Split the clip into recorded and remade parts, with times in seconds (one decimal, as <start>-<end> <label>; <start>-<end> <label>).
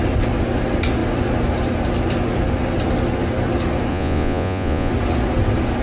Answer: 0.0-3.9 recorded; 3.9-4.9 remade; 4.9-5.8 recorded